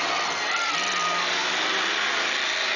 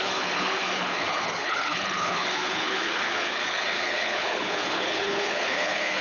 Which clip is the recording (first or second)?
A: first